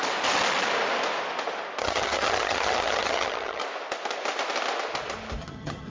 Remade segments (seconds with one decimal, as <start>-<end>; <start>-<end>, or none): 1.8-3.6; 5.4-5.9